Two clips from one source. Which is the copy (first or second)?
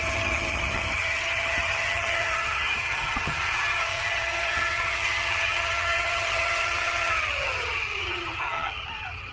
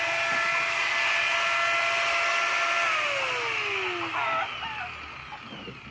first